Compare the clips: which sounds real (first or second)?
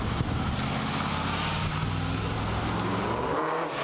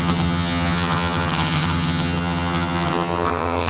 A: first